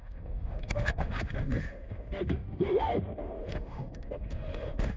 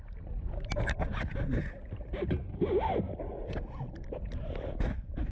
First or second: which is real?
second